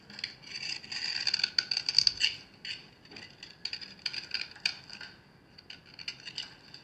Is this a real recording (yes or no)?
yes